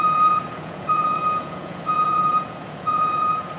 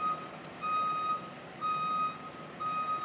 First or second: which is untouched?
second